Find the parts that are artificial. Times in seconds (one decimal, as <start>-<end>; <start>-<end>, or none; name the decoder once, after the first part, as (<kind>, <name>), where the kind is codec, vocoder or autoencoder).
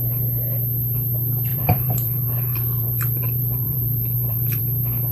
1.5-4.6 (vocoder, BigVGAN v2)